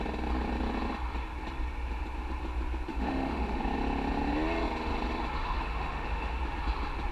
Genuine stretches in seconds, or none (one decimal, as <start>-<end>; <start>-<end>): 0.0-2.9; 3.6-5.4; 6.4-7.1

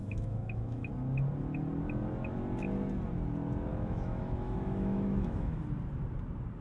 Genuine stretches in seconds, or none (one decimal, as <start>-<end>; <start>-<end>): 0.9-3.7; 5.6-6.6

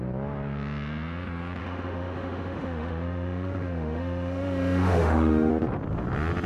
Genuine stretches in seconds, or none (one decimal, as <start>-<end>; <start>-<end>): 0.0-1.6; 5.5-6.5